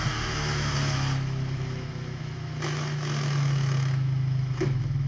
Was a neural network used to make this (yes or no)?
yes